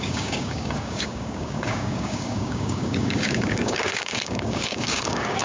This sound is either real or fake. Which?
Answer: fake